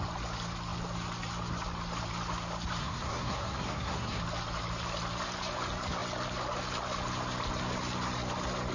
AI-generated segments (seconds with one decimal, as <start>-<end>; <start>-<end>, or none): 2.8-4.2